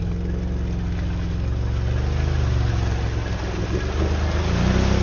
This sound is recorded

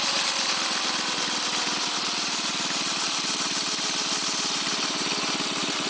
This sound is recorded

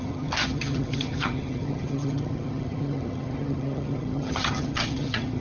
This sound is remade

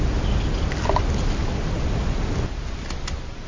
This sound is recorded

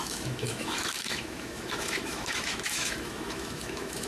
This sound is remade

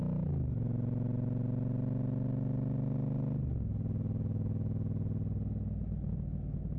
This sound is recorded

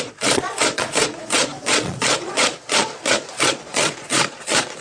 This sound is remade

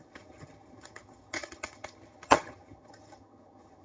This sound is remade